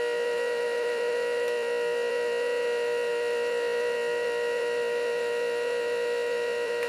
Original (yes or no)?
yes